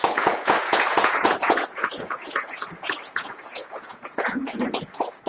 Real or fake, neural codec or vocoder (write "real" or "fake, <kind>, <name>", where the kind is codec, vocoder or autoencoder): fake, vocoder, Vocos